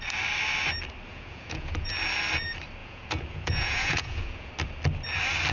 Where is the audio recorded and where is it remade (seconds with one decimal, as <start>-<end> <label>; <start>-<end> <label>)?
0.0-1.1 recorded; 1.1-1.9 remade; 1.9-2.8 recorded; 2.8-4.5 remade; 4.5-5.5 recorded